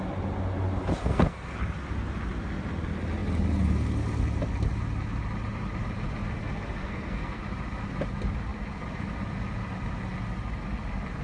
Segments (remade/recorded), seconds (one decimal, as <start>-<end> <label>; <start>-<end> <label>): 0.0-1.0 recorded; 1.0-1.6 remade; 1.6-6.8 recorded; 6.8-7.4 remade; 7.4-11.2 recorded